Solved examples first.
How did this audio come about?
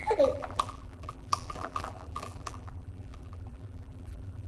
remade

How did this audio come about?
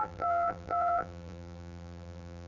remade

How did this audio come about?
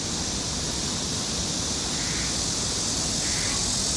recorded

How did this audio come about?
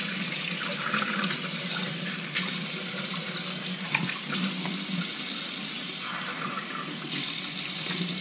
remade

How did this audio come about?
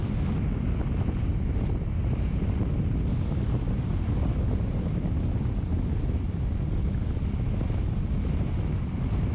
recorded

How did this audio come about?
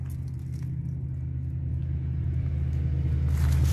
recorded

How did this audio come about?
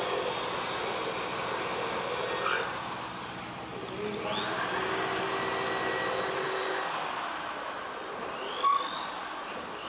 recorded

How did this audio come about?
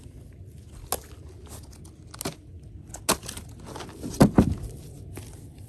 recorded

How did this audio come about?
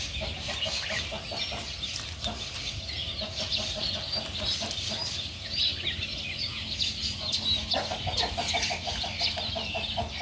recorded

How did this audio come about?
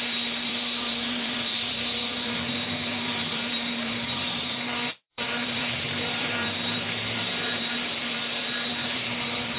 remade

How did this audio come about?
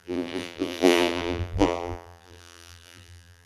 remade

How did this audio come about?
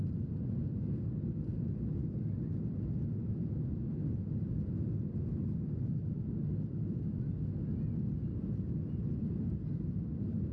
recorded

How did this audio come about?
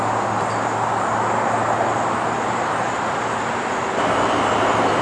remade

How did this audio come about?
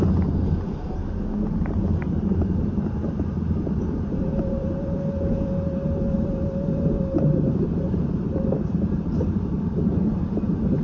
remade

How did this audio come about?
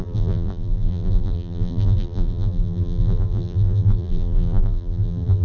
remade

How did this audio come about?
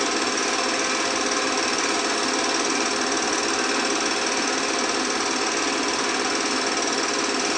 recorded